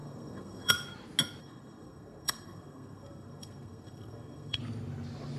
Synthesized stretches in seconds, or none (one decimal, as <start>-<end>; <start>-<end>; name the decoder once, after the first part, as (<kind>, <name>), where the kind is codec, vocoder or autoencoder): 0.0-0.7 (codec, SNAC); 1.4-4.6